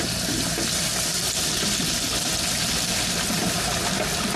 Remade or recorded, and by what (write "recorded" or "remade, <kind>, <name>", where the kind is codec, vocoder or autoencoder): recorded